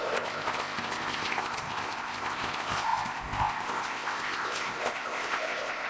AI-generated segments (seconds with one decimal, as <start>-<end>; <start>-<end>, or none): 0.0-5.9